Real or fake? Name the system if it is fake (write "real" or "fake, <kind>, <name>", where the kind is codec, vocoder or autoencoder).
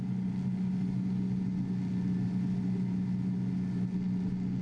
real